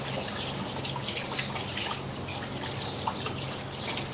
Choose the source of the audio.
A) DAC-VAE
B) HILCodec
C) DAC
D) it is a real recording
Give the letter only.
D